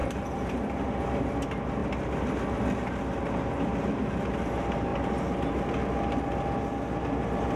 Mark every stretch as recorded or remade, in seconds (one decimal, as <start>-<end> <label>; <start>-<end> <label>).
0.0-1.0 remade; 1.0-7.6 recorded